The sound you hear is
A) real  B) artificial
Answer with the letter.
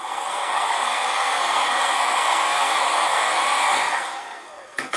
B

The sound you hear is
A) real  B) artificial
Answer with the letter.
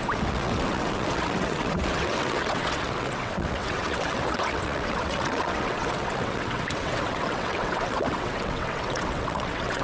B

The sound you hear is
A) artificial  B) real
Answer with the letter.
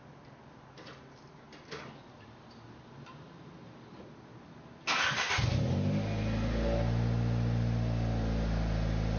B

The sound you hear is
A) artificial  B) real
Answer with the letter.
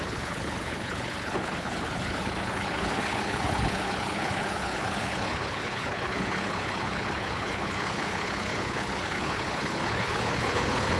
A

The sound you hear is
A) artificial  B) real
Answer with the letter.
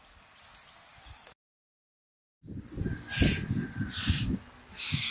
B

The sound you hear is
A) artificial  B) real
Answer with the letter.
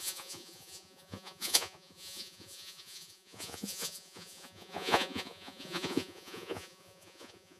A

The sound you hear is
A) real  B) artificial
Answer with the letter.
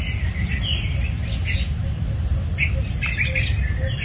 A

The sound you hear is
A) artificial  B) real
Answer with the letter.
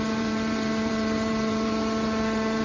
A